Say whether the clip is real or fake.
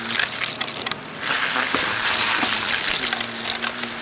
real